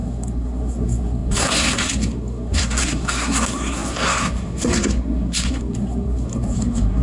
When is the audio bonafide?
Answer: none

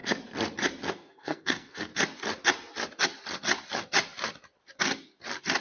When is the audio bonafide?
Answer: 0.0-0.9; 1.9-5.6